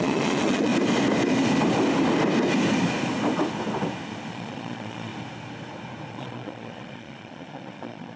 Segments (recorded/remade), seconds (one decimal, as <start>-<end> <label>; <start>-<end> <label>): 0.0-0.7 remade; 0.7-4.3 recorded; 4.3-5.1 remade; 5.1-6.1 recorded; 6.1-8.2 remade